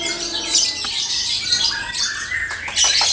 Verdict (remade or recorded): recorded